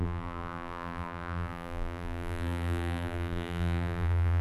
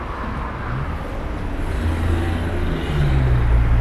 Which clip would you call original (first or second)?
second